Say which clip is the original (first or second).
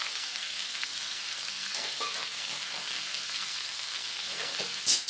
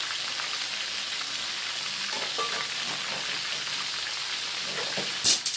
second